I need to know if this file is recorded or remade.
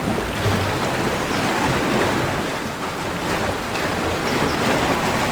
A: recorded